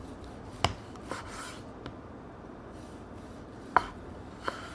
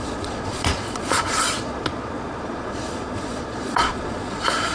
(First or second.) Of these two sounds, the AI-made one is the second